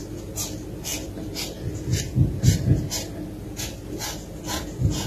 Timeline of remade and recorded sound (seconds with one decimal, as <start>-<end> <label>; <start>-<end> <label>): 0.0-5.1 recorded